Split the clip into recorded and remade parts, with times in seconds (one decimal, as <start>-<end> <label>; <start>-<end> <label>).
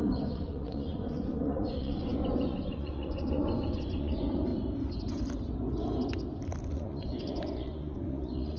0.0-4.5 remade; 4.5-6.7 recorded; 6.7-8.6 remade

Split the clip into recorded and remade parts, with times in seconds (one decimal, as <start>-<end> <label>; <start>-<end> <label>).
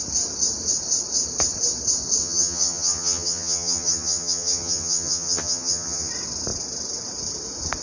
0.0-2.2 recorded; 2.2-6.1 remade; 6.1-7.8 recorded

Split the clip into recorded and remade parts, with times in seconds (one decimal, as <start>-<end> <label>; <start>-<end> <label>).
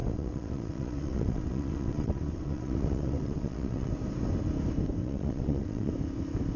0.0-3.9 remade; 3.9-5.0 recorded; 5.0-5.9 remade; 5.9-6.6 recorded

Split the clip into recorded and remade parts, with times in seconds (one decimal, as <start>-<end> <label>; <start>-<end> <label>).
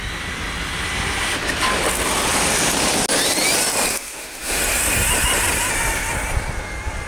0.0-3.9 recorded; 3.9-4.6 remade; 4.6-7.1 recorded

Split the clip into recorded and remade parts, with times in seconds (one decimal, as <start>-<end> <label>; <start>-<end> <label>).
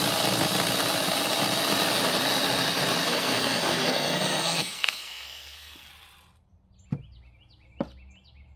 0.0-3.0 recorded; 3.0-5.9 remade; 5.9-8.6 recorded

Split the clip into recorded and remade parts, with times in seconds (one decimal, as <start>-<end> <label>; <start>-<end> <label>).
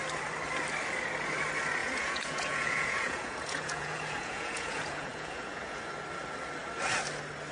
0.0-1.8 recorded; 1.8-5.8 remade; 5.8-7.5 recorded